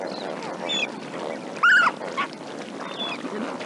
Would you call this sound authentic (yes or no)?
yes